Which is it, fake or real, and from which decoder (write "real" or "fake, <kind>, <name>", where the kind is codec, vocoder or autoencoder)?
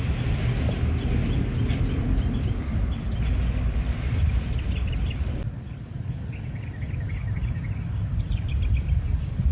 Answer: real